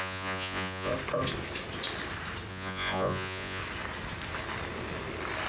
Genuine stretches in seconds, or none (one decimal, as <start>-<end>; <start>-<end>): 0.9-2.5; 3.6-5.5